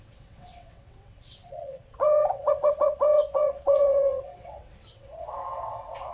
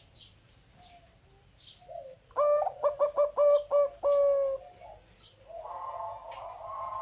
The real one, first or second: second